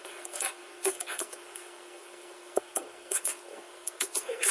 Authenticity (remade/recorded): remade